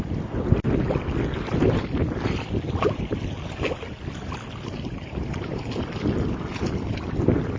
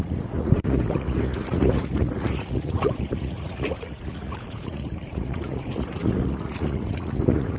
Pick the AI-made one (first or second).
second